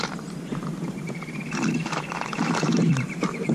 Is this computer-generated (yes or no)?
yes